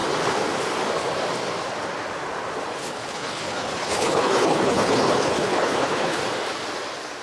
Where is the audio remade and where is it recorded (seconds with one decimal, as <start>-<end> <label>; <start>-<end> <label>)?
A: 0.0-2.8 recorded; 2.8-6.2 remade; 6.2-7.2 recorded